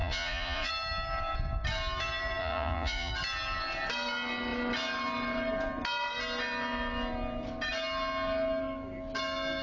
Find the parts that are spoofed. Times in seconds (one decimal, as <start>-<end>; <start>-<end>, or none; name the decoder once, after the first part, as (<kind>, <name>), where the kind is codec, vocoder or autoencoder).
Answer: 0.0-0.7 (vocoder, Vocos); 2.4-3.1